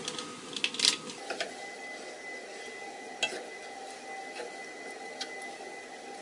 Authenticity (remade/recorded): recorded